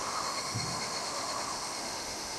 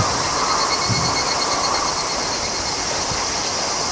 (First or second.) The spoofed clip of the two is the first